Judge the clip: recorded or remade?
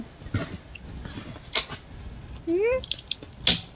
recorded